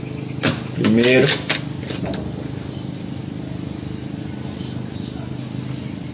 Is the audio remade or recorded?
recorded